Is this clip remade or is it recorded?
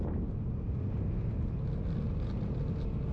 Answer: recorded